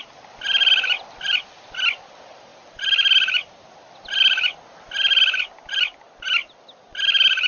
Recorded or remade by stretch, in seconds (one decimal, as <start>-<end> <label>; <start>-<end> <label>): 0.0-7.5 recorded